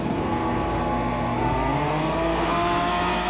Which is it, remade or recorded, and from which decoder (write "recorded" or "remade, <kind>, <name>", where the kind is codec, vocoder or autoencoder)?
remade, codec, SNAC